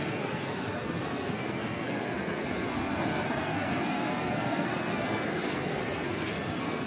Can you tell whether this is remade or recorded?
remade